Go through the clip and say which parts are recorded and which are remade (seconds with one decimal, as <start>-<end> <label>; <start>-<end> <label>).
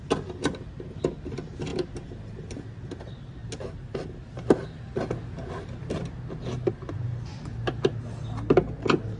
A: 0.0-9.2 recorded